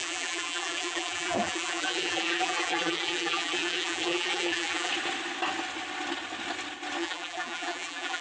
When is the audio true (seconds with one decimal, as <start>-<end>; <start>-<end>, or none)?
4.9-7.0